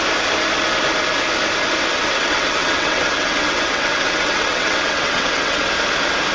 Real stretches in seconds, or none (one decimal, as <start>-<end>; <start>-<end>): 0.0-1.9; 5.7-6.3